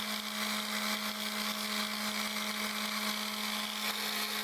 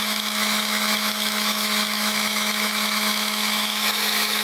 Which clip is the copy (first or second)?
second